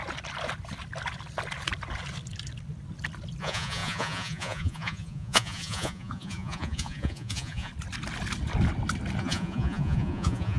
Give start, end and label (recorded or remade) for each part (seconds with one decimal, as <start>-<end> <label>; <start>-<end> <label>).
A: 0.0-3.4 recorded; 3.4-7.7 remade; 7.7-9.2 recorded; 9.2-10.6 remade